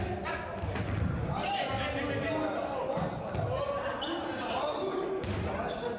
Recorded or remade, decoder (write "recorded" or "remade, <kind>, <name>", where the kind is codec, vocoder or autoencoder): recorded